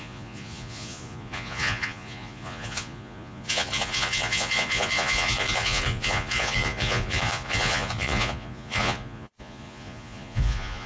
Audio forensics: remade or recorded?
remade